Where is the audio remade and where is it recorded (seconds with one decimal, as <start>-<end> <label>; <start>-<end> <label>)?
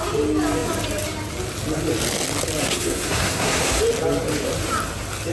0.0-2.6 recorded; 2.6-3.8 remade; 3.8-5.3 recorded